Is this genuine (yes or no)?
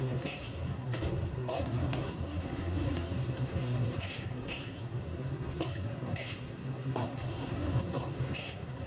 no